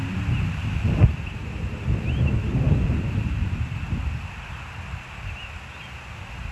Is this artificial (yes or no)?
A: no